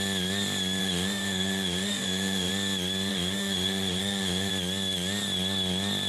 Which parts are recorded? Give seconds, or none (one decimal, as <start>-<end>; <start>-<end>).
0.0-0.8; 2.5-3.1; 4.5-6.1